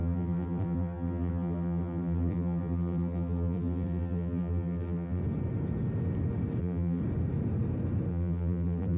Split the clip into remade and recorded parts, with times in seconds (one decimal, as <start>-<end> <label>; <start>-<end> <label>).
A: 0.0-5.2 remade; 5.2-6.6 recorded; 6.6-7.0 remade; 7.0-8.1 recorded; 8.1-9.0 remade